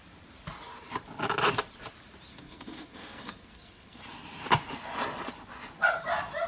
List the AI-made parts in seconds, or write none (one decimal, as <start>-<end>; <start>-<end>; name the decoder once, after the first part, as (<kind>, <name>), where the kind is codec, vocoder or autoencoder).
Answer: 2.3-4.0 (codec, SNAC)